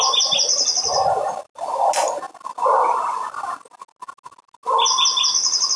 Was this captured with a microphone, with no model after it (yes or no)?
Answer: yes